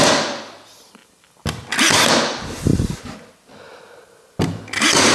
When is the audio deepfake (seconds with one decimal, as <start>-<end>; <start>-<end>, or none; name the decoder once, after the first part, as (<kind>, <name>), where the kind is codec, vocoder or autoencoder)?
none